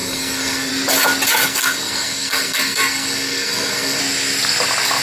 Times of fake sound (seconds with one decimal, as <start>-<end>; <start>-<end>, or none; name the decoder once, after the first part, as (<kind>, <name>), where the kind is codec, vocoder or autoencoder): 0.0-0.7 (codec, SNAC); 1.4-4.0